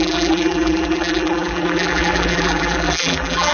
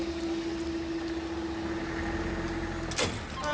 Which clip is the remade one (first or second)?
first